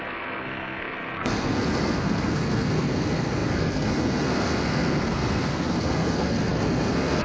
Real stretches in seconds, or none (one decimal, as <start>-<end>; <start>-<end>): none